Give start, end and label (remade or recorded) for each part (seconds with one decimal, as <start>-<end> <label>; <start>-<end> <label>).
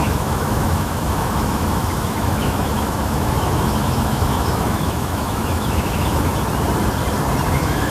0.0-6.3 remade; 6.3-7.5 recorded; 7.5-7.9 remade